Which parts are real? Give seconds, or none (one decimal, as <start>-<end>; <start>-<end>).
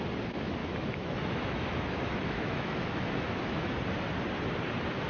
0.0-0.6; 3.7-5.1